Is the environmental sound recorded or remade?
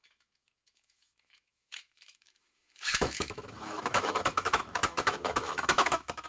remade